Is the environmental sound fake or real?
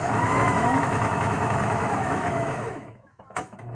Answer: fake